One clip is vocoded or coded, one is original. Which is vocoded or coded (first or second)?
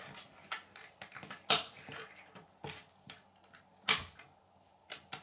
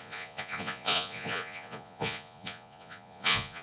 second